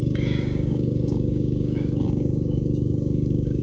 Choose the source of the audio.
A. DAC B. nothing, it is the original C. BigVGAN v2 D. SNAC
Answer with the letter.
A